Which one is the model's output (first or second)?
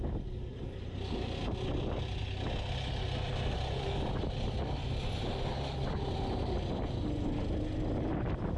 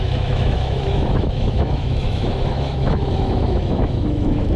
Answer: second